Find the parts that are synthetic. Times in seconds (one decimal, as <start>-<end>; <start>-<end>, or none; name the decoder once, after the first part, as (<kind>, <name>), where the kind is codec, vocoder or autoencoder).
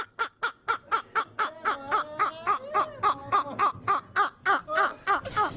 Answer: 0.6-1.2 (vocoder, BigVGAN v2)